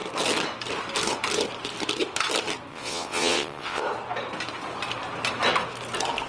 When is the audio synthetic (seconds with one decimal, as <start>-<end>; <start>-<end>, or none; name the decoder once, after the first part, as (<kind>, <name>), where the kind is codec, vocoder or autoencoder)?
2.7-3.8 (vocoder, WaveNeXt)